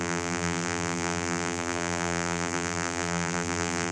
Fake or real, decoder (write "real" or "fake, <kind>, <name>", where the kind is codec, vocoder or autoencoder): fake, vocoder, BigVGAN v2